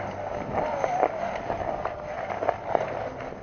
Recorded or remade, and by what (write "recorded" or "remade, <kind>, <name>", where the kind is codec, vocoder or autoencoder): recorded